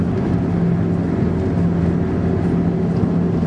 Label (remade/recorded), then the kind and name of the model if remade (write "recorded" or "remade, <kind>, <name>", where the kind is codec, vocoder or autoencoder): recorded